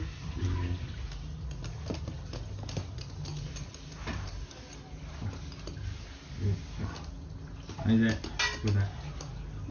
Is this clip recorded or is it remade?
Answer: recorded